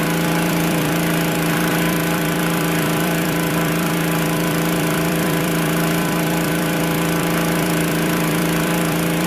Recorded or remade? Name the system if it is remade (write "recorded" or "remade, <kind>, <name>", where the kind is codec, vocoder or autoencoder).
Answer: remade, vocoder, BigVGAN v2